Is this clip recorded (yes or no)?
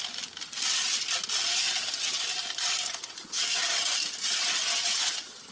yes